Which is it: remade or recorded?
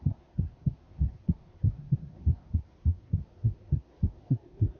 remade